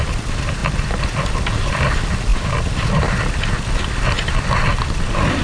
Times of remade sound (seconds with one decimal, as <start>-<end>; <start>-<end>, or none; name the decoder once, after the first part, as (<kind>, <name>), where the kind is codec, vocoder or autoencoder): none